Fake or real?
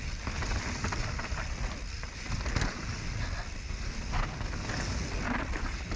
real